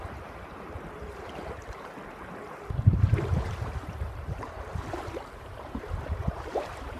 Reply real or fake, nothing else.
fake